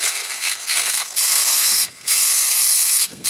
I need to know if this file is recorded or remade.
remade